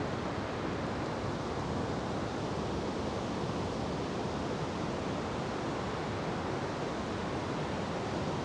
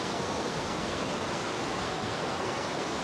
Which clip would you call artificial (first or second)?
second